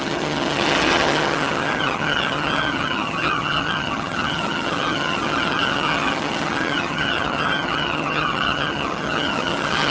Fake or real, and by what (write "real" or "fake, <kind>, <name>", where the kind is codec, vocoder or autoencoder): fake, vocoder, HiFi-GAN